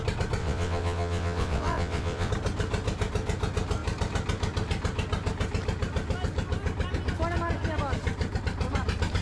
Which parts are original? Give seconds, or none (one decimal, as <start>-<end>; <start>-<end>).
0.0-0.4; 2.3-9.2